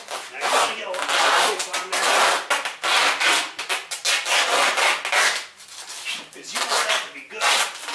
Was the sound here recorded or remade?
recorded